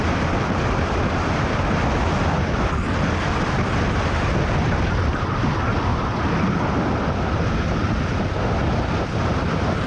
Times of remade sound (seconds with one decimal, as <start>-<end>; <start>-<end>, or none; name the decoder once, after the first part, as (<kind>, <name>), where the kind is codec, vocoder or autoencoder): 5.9-6.6 (vocoder, BigVGAN v2); 7.8-8.6